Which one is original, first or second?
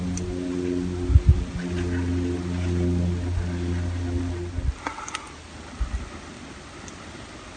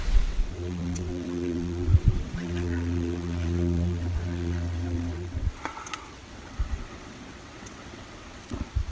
first